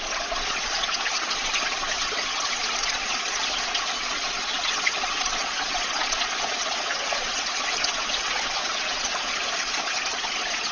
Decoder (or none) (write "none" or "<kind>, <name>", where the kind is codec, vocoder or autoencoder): vocoder, Vocos